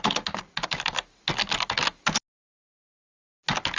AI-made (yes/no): no